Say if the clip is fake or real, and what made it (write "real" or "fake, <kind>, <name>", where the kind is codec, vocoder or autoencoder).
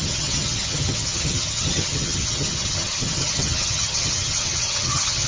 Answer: fake, vocoder, HiFi-GAN